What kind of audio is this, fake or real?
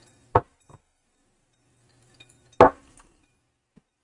real